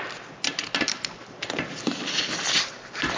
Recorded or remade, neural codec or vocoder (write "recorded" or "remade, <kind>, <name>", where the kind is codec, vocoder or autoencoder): recorded